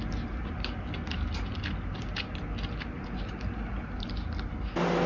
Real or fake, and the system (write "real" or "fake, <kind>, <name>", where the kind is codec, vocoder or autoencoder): real